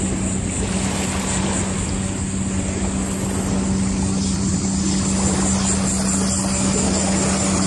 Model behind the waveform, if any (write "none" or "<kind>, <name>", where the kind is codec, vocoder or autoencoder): none